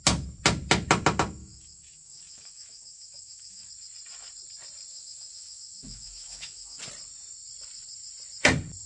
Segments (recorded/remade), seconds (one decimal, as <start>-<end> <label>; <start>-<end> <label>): 0.0-1.4 recorded; 1.4-3.7 remade; 3.7-4.9 recorded; 4.9-6.8 remade; 6.8-8.9 recorded

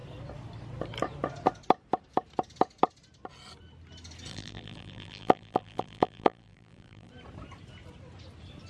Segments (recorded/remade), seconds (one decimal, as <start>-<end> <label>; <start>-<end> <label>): 0.0-4.3 recorded; 4.3-7.1 remade; 7.1-8.7 recorded

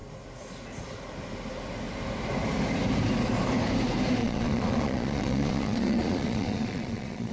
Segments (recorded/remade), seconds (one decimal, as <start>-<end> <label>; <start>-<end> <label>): 0.0-4.2 recorded; 4.2-7.3 remade

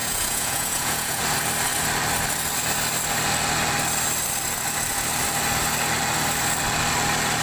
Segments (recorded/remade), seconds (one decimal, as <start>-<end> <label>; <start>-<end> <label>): 0.0-1.2 remade; 1.2-7.4 recorded

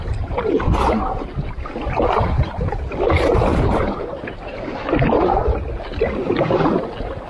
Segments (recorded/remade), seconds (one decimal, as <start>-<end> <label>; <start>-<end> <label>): 0.0-3.5 recorded; 3.5-4.6 remade; 4.6-7.3 recorded

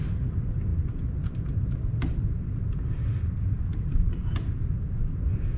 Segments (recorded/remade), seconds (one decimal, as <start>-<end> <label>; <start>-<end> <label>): 0.0-5.6 recorded

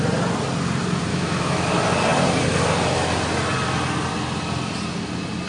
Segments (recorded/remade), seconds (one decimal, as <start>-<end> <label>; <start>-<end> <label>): 0.0-1.1 recorded; 1.1-1.7 remade; 1.7-5.5 recorded